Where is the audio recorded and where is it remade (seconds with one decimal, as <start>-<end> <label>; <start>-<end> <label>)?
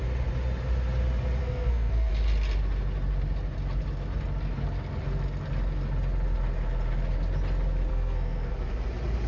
0.0-1.4 recorded; 1.4-2.1 remade; 2.1-7.9 recorded; 7.9-8.5 remade; 8.5-9.3 recorded